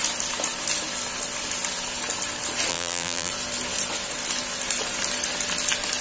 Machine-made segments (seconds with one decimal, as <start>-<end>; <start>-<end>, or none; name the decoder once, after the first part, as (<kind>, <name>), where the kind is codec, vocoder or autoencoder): 2.7-3.3 (vocoder, BigVGAN v2)